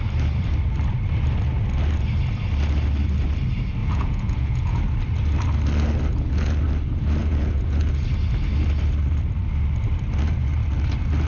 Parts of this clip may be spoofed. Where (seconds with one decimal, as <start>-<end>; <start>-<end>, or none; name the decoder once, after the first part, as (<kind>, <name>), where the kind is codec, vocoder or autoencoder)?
3.8-4.8 (vocoder, Vocos); 7.2-7.8